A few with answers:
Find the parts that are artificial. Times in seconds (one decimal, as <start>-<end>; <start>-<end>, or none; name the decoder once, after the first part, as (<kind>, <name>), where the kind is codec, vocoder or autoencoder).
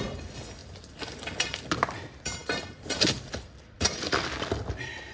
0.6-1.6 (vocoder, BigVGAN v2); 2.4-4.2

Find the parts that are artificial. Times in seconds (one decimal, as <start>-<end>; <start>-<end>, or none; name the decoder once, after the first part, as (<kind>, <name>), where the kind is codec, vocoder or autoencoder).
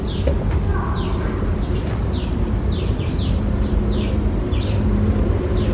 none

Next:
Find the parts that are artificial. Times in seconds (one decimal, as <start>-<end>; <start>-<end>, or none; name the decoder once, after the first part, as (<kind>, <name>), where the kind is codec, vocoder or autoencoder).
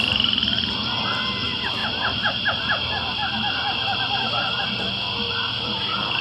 none